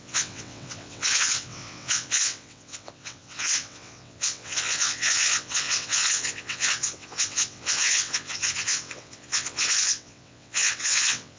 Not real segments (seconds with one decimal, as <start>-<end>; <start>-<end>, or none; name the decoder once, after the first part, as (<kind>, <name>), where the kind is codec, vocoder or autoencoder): 0.0-11.4 (vocoder, WaveNeXt)